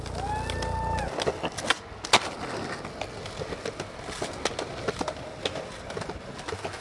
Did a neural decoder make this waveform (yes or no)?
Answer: no